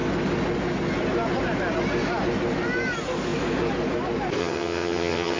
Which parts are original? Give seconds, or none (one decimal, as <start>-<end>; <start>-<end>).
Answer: 0.0-4.4